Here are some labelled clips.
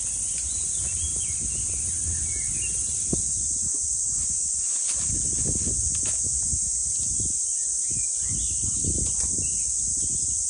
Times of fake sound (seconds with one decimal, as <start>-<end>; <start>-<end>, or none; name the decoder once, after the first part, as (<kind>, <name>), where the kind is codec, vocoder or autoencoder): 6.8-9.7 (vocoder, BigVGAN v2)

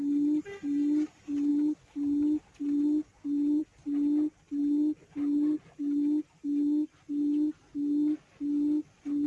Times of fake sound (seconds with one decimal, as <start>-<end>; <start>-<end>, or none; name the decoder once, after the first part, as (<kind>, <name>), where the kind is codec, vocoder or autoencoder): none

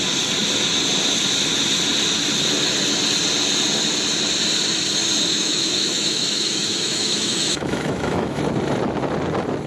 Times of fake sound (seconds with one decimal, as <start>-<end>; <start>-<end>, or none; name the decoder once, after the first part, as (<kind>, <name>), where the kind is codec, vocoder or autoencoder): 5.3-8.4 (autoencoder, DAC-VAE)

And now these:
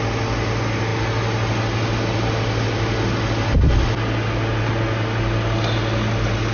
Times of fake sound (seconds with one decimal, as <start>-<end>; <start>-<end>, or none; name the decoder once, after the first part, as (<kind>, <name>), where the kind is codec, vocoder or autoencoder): none

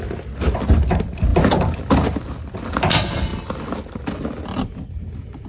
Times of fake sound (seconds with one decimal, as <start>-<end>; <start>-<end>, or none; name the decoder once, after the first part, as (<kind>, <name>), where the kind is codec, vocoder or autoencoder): none

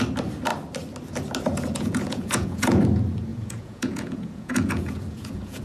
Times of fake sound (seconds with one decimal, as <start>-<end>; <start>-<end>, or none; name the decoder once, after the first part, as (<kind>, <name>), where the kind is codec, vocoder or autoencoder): 1.5-2.8 (vocoder, Vocos); 3.3-5.6

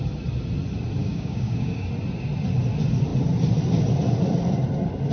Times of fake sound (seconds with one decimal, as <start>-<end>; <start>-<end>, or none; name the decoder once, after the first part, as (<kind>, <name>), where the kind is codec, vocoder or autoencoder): 1.0-1.9 (codec, DAC)

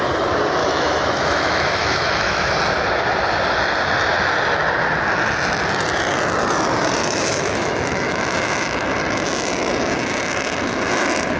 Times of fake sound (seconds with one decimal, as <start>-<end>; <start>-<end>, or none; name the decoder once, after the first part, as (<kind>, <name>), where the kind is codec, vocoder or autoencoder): 0.6-2.5 (autoencoder, DAC-VAE); 7.0-8.2